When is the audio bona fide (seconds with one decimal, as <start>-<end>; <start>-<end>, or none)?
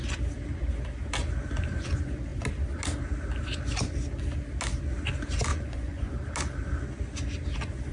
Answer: 0.0-5.5; 6.1-7.9